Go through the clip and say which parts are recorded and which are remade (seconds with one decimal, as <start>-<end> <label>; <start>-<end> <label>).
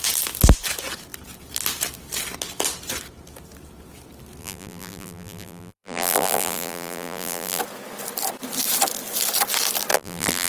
0.0-4.4 recorded; 4.4-7.6 remade; 7.6-9.9 recorded; 9.9-10.5 remade